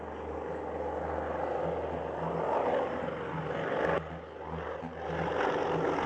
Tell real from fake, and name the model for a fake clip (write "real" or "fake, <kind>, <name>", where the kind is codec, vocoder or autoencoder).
real